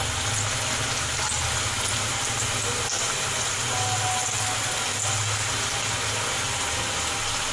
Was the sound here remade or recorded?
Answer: recorded